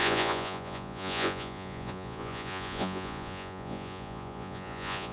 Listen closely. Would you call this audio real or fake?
fake